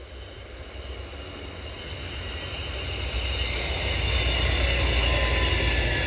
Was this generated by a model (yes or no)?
no